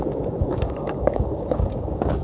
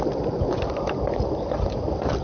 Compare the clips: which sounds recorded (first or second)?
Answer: second